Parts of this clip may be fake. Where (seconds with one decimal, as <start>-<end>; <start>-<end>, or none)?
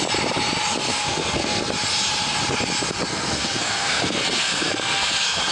0.9-1.7; 3.1-5.5